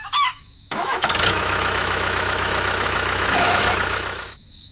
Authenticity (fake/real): fake